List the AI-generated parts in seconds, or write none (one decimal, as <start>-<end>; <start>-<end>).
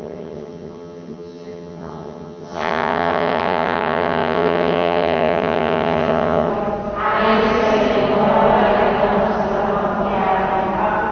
0.0-6.5